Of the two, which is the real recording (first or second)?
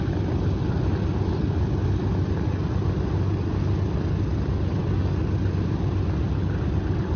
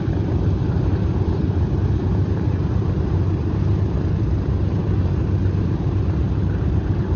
first